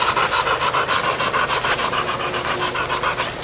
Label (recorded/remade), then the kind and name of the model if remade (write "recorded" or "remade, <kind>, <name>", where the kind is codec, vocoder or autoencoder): recorded